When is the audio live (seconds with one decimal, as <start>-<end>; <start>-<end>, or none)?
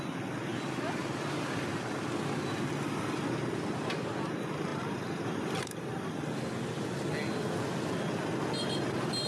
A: 0.0-4.7; 6.1-9.3